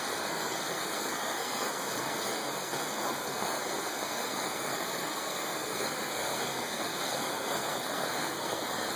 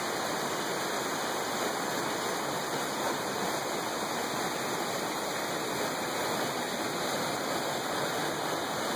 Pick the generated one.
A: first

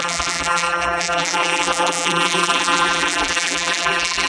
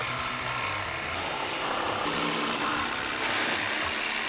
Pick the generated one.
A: first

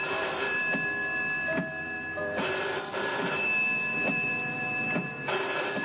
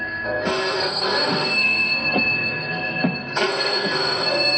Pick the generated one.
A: second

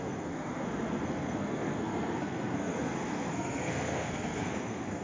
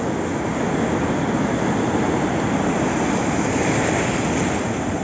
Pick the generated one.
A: first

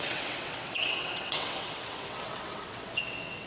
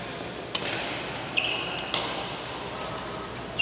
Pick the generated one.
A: first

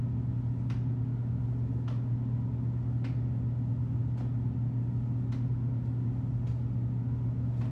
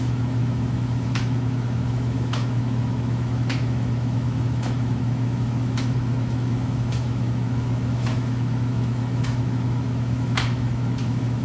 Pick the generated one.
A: second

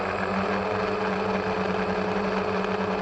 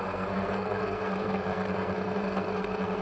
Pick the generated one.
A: second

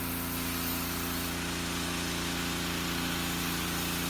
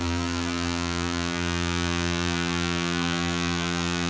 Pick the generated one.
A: second